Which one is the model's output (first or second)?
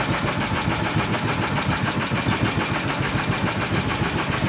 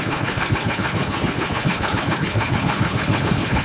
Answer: second